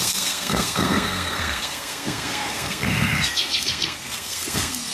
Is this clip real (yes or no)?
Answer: no